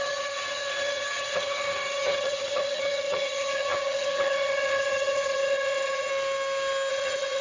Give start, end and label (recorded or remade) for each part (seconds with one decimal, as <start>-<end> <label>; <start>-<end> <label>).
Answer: 0.0-6.1 remade; 6.1-6.9 recorded; 6.9-7.4 remade